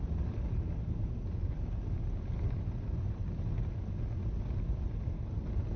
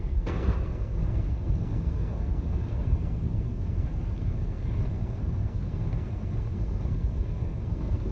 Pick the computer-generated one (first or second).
second